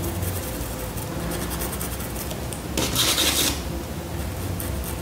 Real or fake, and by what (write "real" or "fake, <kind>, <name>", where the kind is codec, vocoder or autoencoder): real